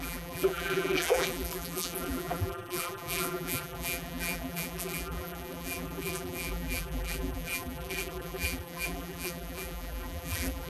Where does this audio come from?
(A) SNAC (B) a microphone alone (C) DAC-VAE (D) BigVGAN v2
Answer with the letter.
D